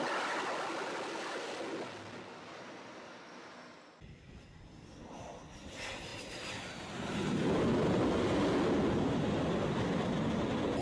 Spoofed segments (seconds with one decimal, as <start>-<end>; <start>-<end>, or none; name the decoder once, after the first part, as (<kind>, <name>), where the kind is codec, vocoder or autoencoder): none